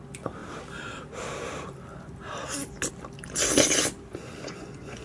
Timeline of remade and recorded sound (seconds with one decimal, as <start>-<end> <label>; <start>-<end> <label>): 0.0-4.1 recorded; 4.1-5.0 remade